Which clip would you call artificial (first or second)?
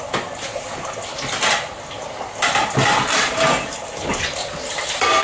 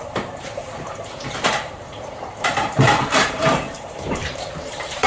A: second